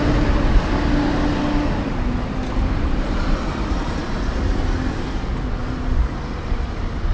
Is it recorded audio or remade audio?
recorded